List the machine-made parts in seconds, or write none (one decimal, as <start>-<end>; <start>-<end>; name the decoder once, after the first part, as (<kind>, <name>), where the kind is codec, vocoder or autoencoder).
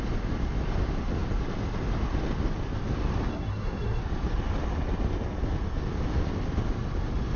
3.3-4.0 (codec, SNAC)